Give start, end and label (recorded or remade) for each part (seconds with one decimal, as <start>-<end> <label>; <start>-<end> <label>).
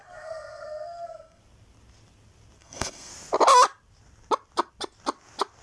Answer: 0.0-1.4 remade; 1.4-2.6 recorded; 2.6-3.1 remade; 3.1-5.6 recorded